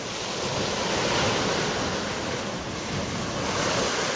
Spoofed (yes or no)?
no